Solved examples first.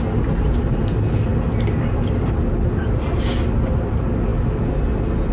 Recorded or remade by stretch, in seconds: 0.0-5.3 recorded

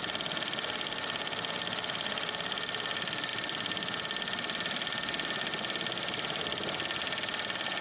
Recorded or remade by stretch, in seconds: 0.0-7.8 recorded

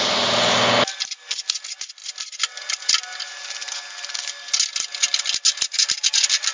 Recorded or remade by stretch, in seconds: 0.0-6.5 recorded

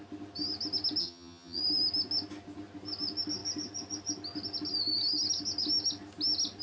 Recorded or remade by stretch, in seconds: 0.0-1.0 recorded; 1.0-1.6 remade; 1.6-6.6 recorded

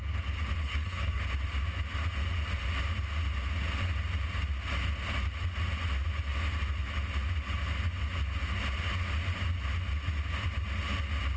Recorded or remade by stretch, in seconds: 0.0-0.6 recorded; 0.6-1.2 remade; 1.2-11.4 recorded

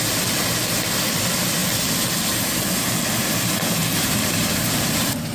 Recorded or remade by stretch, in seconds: 0.0-3.8 recorded; 3.8-5.3 remade

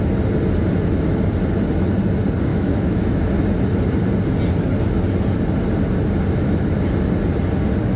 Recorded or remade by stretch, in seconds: 0.0-2.5 recorded; 2.5-3.3 remade; 3.3-8.0 recorded